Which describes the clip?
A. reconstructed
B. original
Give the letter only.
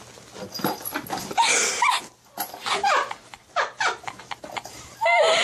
B